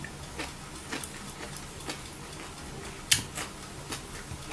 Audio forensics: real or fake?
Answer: real